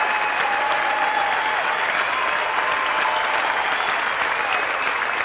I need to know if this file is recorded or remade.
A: recorded